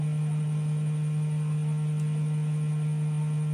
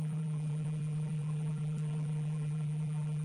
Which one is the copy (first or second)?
second